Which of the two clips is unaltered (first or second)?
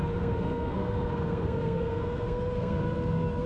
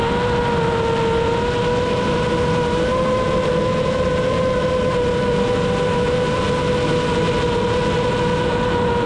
second